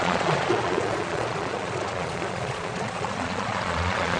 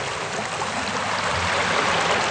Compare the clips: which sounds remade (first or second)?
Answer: first